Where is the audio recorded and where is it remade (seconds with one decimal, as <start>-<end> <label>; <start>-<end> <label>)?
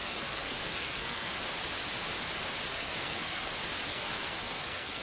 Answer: 0.0-1.3 remade; 1.3-2.7 recorded; 2.7-3.5 remade; 3.5-3.9 recorded; 3.9-5.0 remade